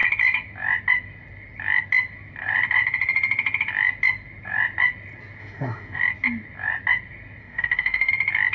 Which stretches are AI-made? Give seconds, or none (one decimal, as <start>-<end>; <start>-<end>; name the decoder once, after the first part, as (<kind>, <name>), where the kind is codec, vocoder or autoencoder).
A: 5.4-6.0 (autoencoder, DAC-VAE); 7.4-8.1